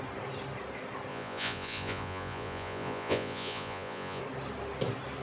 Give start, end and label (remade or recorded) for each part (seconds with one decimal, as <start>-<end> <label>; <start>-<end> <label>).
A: 0.0-1.1 recorded; 1.1-4.2 remade; 4.2-5.2 recorded